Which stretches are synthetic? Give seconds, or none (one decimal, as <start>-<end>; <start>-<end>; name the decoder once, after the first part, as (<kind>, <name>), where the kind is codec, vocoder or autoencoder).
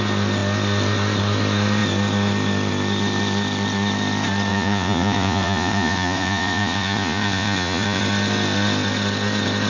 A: 4.5-8.0 (vocoder, Vocos)